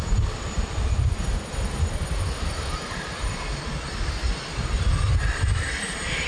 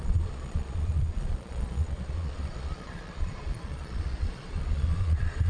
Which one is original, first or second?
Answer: first